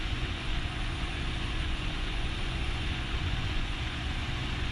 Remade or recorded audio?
remade